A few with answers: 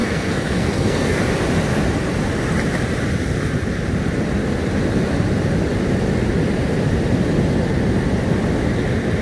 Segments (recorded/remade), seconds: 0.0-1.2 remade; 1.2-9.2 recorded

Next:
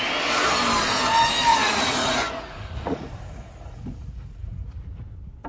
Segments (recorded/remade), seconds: 0.0-1.5 recorded; 1.5-4.8 remade; 4.8-5.5 recorded

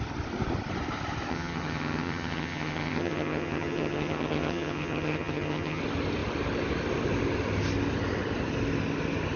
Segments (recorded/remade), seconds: 0.0-1.3 recorded; 1.3-5.8 remade; 5.8-9.4 recorded

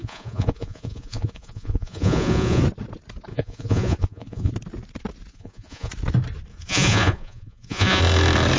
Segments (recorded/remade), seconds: 0.0-2.6 remade; 2.6-3.3 recorded; 3.3-4.5 remade; 4.5-5.3 recorded; 5.3-5.9 remade; 5.9-6.5 recorded; 6.5-8.0 remade; 8.0-8.6 recorded

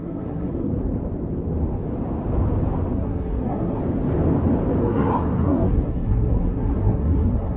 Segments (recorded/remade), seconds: 0.0-0.7 remade; 0.7-2.9 recorded; 2.9-3.8 remade; 3.8-4.8 recorded; 4.8-7.6 remade

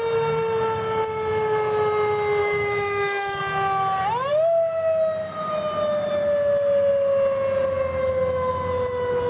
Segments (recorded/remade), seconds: 0.0-2.4 recorded; 2.4-3.4 remade; 3.4-9.3 recorded